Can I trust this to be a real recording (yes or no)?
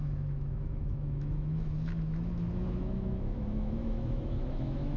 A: no